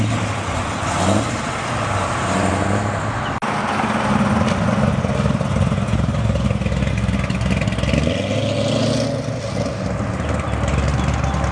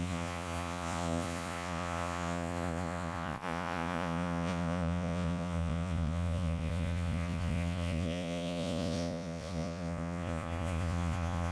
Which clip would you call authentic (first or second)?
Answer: first